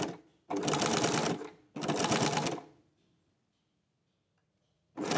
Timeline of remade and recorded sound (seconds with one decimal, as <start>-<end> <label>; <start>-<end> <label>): 0.0-4.4 recorded; 4.4-5.2 remade